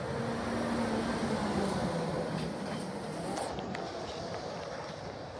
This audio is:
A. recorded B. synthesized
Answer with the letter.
A